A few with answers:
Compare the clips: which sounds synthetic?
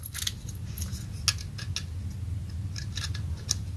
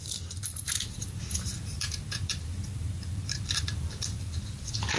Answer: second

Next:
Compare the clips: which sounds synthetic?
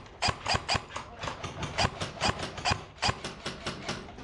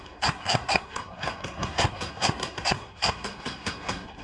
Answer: second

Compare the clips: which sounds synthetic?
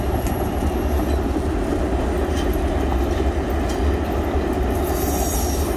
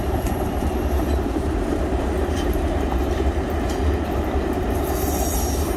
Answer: second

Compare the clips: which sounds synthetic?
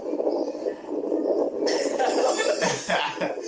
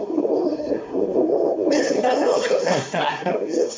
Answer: second